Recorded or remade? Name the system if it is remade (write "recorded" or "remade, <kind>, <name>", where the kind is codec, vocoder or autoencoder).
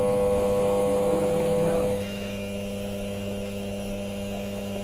remade, autoencoder, DAC-VAE